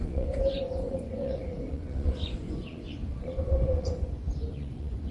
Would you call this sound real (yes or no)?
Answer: no